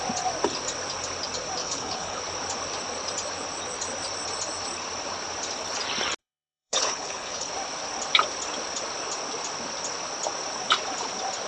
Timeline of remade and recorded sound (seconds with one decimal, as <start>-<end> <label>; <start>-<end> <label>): 0.0-1.6 recorded; 1.6-2.2 remade; 2.2-6.2 recorded; 6.2-7.5 remade; 7.5-11.5 recorded